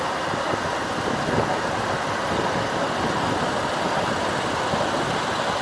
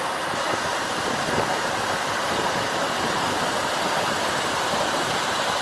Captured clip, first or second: first